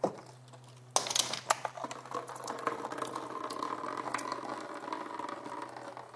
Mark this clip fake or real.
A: real